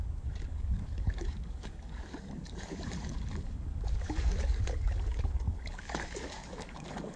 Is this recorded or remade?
remade